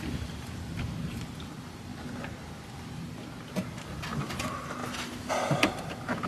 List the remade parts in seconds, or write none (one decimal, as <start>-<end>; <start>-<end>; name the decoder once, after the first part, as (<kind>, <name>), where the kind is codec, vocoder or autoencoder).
0.0-1.9 (vocoder, BigVGAN v2); 4.0-4.8; 5.3-6.3